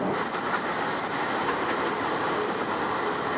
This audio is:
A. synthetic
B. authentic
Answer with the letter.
B